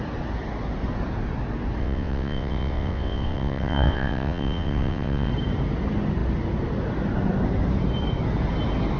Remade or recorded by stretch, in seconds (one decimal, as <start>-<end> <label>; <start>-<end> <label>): 0.0-1.8 recorded; 1.8-5.3 remade; 5.3-9.0 recorded